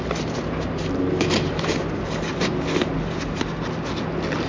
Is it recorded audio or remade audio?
recorded